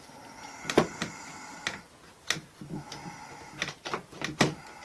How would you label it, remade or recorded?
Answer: recorded